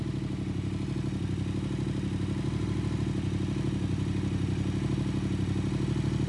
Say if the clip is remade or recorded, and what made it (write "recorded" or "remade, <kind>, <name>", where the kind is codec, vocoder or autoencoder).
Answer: recorded